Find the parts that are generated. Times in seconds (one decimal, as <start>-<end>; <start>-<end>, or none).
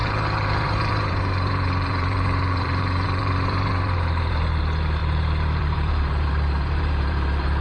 0.0-4.6; 5.0-7.6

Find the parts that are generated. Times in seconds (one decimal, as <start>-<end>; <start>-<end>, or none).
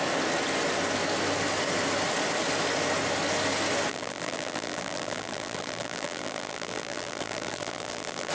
3.9-8.3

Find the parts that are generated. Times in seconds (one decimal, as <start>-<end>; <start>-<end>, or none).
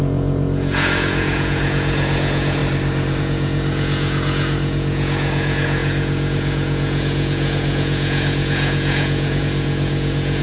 0.0-2.6; 3.2-10.4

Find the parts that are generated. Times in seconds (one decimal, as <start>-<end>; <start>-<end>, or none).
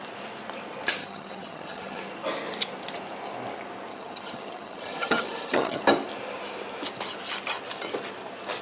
1.0-2.0; 3.9-5.8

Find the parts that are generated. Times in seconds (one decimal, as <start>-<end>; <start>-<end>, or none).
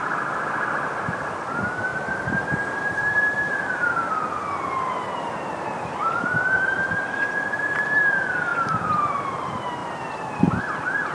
1.9-4.1; 5.1-7.0; 8.5-9.1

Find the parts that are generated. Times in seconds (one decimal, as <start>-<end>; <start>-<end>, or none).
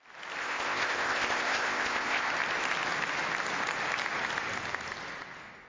0.4-2.3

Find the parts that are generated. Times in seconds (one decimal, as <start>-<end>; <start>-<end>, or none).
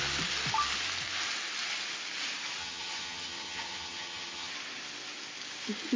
2.6-4.5